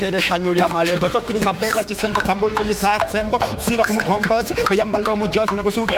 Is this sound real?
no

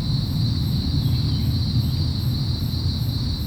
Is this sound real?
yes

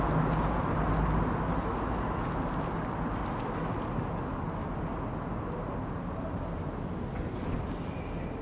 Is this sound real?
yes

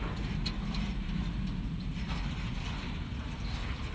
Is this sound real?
yes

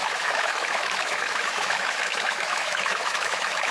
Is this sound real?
no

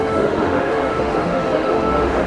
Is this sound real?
no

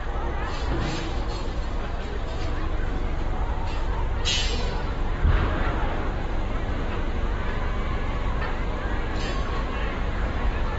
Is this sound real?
yes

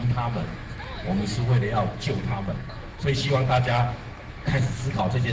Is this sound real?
no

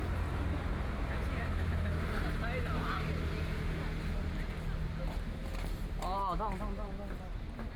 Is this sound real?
yes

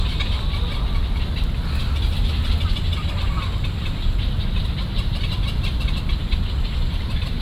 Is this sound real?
yes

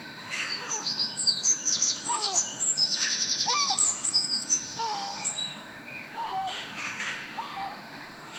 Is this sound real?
no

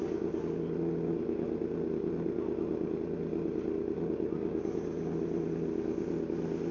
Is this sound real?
yes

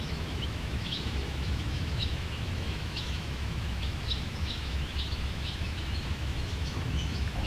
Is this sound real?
no